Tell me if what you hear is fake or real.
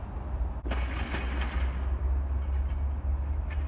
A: real